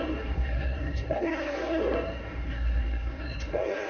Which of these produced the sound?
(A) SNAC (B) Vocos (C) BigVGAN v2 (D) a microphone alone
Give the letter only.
A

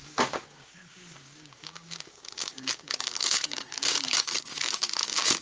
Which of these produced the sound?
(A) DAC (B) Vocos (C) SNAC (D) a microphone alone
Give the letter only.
A